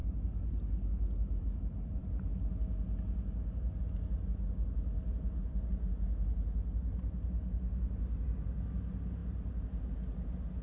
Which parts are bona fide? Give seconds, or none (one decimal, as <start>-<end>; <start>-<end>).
0.0-10.6